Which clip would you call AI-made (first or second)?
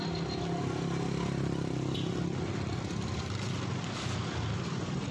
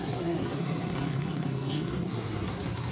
second